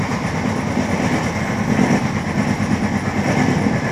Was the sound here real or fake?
real